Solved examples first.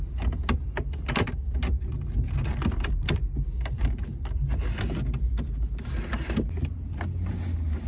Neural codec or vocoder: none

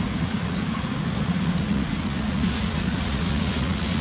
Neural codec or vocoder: vocoder, Vocos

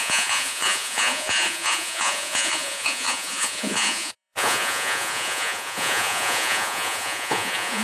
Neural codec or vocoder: vocoder, Vocos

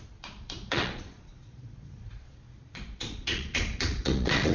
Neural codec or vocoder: vocoder, Vocos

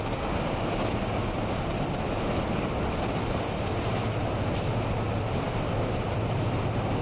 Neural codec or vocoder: none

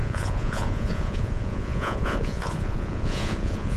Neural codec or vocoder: vocoder, Vocos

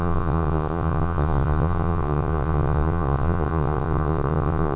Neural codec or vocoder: vocoder, Vocos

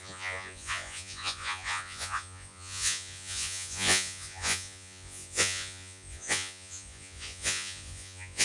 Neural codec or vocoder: vocoder, Vocos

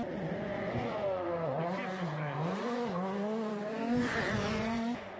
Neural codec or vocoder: vocoder, Vocos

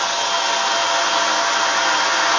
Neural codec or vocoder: none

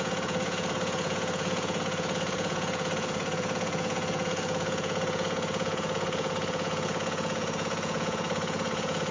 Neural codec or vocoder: vocoder, Vocos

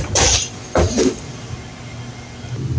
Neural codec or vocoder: none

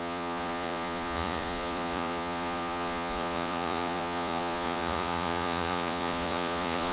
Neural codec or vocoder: vocoder, Vocos